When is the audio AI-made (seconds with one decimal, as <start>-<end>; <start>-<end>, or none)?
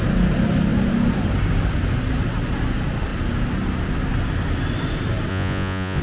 5.3-6.0